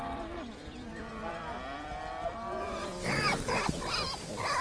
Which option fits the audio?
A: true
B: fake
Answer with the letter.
B